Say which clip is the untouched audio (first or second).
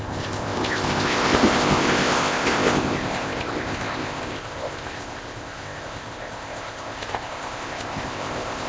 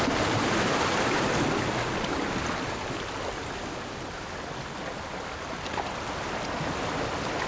second